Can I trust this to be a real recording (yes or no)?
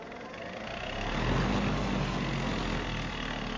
yes